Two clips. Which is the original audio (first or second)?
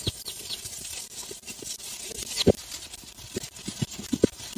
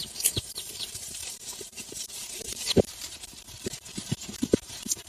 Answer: first